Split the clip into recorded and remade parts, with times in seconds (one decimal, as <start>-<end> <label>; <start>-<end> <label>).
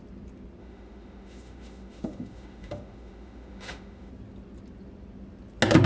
0.0-0.6 recorded; 0.6-4.1 remade; 4.1-5.9 recorded